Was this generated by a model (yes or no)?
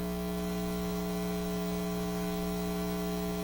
no